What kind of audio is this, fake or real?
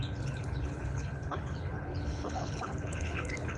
fake